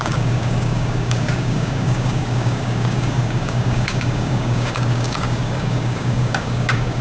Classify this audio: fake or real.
fake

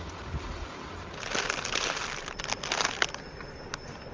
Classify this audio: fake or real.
real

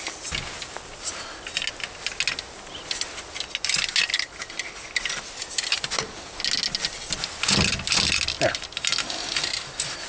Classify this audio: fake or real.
real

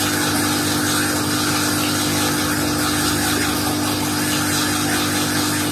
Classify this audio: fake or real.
real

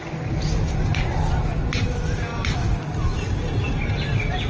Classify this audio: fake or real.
real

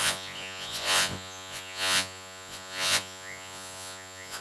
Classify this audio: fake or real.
fake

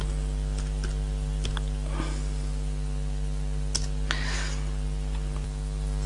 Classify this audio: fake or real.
real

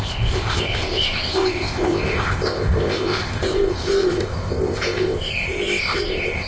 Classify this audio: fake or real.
fake